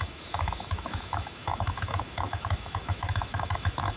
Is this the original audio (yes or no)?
no